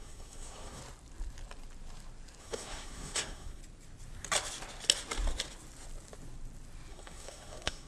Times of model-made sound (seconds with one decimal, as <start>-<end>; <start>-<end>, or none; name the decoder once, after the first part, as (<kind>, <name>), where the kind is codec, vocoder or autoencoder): 0.0-0.8 (codec, SNAC); 2.4-3.6; 6.9-7.9